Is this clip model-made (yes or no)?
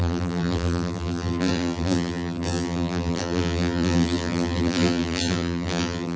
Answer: yes